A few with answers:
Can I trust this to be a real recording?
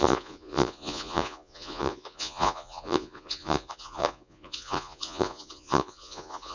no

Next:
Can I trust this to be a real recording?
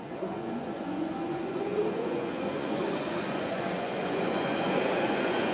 no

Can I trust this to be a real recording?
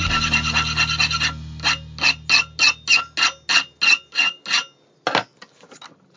yes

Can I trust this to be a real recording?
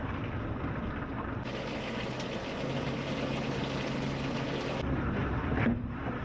yes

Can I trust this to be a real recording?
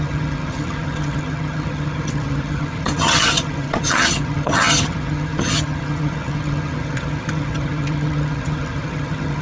no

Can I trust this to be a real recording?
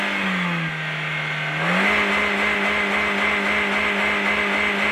yes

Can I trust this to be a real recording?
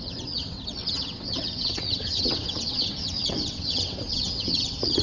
no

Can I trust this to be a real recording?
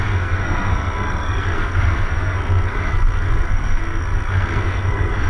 no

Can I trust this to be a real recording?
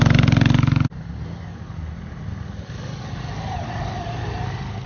yes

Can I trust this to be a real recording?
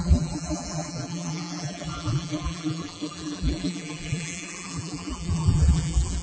no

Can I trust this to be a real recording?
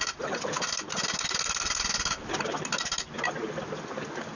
yes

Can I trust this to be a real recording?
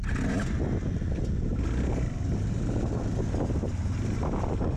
yes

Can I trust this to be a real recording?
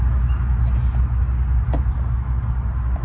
yes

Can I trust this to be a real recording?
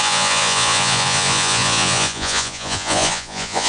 no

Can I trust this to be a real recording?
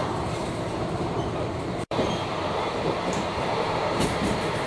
no